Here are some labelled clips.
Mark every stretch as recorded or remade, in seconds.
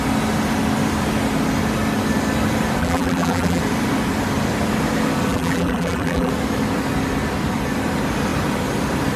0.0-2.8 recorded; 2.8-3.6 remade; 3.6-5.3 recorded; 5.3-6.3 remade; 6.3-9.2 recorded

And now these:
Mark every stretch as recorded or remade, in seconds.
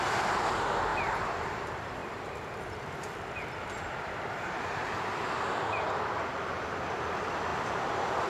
0.0-0.9 recorded; 0.9-1.6 remade; 1.6-7.5 recorded; 7.5-8.3 remade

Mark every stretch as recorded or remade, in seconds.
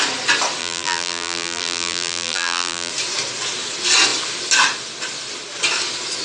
0.0-0.6 recorded; 0.6-2.9 remade; 2.9-6.2 recorded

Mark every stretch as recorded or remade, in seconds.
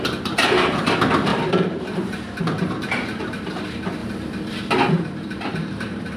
0.0-4.0 remade; 4.0-4.9 recorded; 4.9-6.2 remade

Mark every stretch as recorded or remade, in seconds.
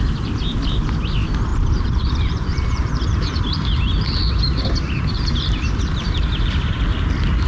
0.0-1.5 recorded; 1.5-5.8 remade; 5.8-7.5 recorded